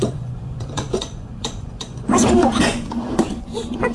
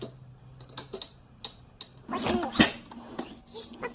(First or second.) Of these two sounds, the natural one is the second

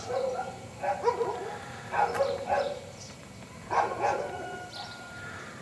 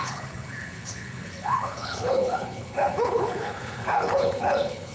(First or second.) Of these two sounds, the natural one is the first